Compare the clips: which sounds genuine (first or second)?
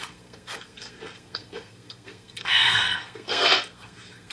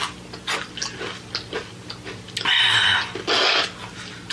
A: second